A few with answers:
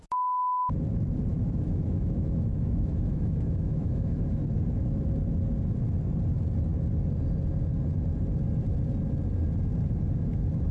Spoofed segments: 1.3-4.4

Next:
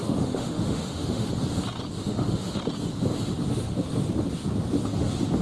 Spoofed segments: 0.0-1.3; 2.0-2.6

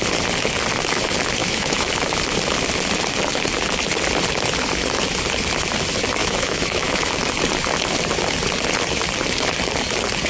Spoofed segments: 1.4-1.9; 6.2-7.1

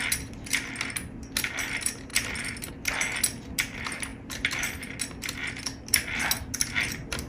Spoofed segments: none

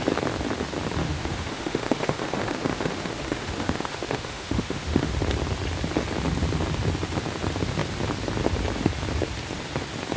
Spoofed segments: 1.0-5.1